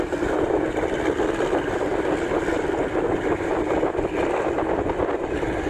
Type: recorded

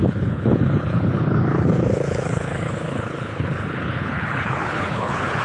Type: remade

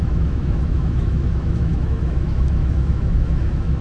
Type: remade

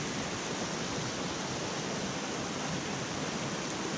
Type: recorded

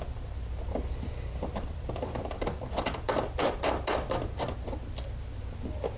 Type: remade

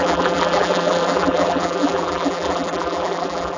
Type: remade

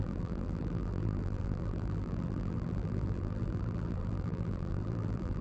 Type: remade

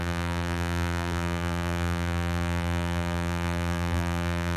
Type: remade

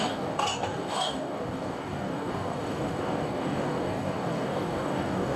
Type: remade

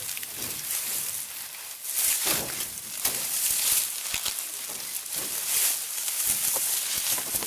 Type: recorded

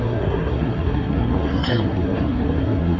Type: remade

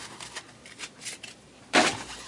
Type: recorded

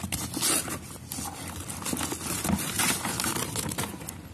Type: recorded